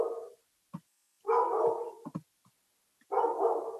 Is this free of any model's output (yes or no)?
yes